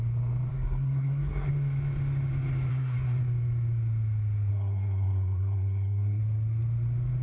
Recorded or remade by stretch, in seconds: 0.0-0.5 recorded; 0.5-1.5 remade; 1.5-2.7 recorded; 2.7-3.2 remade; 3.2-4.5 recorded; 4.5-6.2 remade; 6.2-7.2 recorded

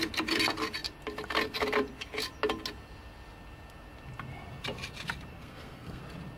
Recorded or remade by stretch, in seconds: 0.0-5.3 recorded; 5.3-6.0 remade; 6.0-6.4 recorded

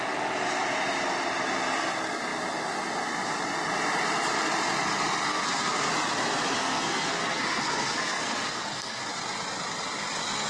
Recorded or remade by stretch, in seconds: 0.0-5.3 recorded; 5.3-5.9 remade; 5.9-6.6 recorded; 6.6-9.0 remade; 9.0-10.5 recorded

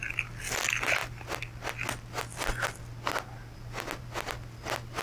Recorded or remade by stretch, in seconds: 0.0-5.0 recorded